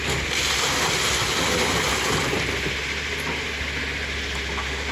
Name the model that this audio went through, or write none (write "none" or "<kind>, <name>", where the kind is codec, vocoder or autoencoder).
none